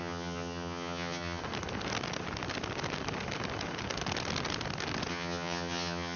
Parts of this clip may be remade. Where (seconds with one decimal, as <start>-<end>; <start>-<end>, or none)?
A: 0.0-1.4; 5.1-6.2

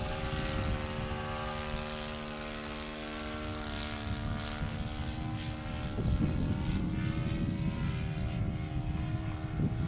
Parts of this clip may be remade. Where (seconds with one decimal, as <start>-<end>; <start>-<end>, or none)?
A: none

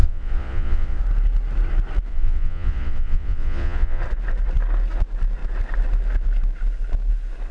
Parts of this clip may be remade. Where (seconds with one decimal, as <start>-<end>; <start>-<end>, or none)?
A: 0.0-1.0; 2.1-4.0

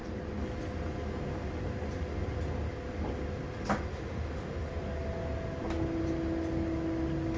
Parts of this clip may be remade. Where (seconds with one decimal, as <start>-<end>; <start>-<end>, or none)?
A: 3.9-4.7